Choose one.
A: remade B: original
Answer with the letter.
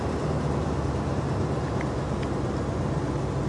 B